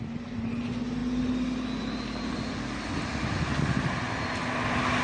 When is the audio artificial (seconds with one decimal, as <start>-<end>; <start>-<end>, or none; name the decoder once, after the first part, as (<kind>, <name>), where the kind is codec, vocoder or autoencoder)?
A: none